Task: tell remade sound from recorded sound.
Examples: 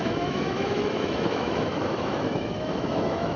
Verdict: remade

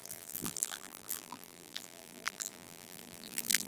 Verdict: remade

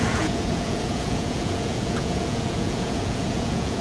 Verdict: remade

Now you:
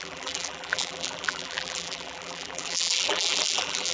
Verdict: remade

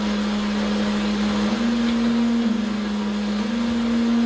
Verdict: recorded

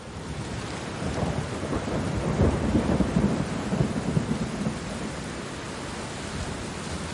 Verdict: recorded